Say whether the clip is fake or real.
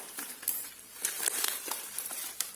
fake